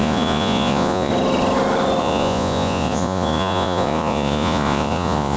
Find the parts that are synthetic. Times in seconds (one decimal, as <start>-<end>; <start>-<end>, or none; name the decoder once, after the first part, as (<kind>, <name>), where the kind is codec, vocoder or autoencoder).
0.0-1.1 (vocoder, Vocos); 2.0-5.4

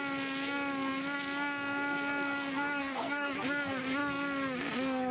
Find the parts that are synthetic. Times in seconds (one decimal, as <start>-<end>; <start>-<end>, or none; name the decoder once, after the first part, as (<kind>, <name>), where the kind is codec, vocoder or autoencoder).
2.8-3.3 (codec, SNAC)

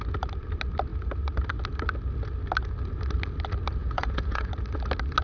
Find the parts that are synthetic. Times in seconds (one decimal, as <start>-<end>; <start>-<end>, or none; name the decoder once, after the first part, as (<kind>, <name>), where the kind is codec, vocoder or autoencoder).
3.8-4.5 (vocoder, Vocos)

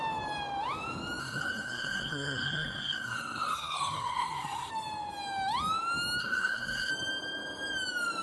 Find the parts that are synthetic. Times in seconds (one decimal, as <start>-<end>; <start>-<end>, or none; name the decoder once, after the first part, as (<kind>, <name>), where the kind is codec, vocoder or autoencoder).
1.2-4.7 (codec, SNAC); 6.2-6.9

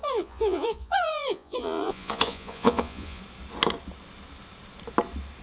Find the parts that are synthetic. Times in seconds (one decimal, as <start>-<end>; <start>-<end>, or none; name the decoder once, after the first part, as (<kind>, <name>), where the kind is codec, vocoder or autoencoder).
0.0-3.2 (vocoder, Vocos)

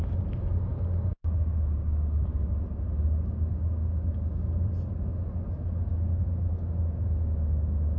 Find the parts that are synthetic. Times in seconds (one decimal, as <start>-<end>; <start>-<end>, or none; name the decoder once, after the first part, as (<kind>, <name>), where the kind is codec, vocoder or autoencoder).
none

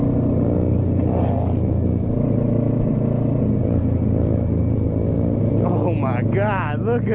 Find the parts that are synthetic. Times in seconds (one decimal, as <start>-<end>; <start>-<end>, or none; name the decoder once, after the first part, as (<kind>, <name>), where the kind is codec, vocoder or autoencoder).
none

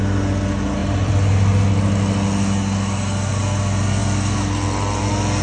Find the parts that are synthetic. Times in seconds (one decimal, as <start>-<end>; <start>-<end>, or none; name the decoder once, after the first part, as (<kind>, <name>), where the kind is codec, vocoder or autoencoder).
0.8-1.6 (vocoder, BigVGAN v2)